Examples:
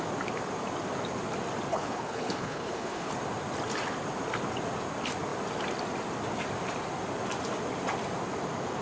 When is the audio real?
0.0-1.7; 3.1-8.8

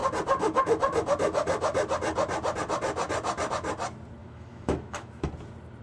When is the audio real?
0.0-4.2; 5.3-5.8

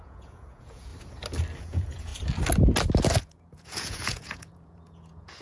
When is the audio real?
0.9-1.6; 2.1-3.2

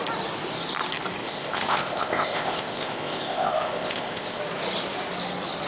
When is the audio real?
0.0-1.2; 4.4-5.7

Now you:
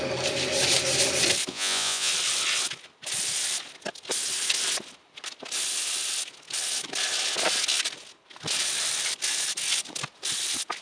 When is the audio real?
0.0-1.5; 2.1-10.8